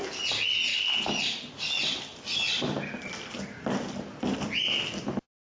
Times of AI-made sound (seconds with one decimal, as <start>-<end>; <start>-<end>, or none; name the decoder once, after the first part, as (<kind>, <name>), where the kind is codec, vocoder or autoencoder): 0.7-1.5 (vocoder, BigVGAN v2); 2.1-5.4